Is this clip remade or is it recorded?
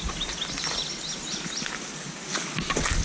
recorded